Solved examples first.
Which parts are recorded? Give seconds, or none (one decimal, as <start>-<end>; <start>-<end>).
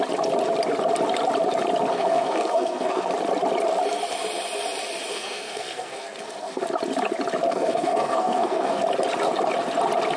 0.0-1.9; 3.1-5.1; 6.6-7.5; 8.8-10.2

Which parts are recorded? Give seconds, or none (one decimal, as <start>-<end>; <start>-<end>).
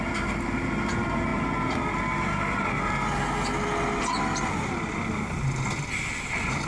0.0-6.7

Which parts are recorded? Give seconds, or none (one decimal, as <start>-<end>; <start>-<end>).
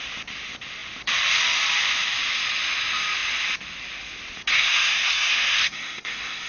0.0-4.5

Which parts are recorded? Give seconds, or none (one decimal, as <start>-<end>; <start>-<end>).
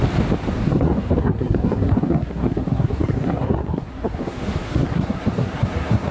0.0-0.5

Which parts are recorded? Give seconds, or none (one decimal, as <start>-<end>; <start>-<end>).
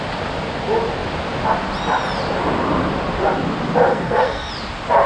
0.0-3.9; 4.5-5.1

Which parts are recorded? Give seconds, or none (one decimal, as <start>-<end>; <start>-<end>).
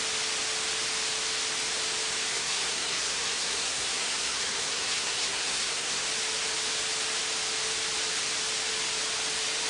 0.0-2.3; 6.0-9.7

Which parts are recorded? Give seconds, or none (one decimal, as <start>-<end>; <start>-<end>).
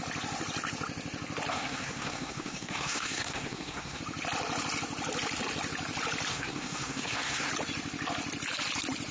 0.0-1.5; 4.0-6.3; 7.5-9.1